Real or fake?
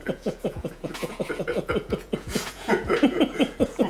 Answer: fake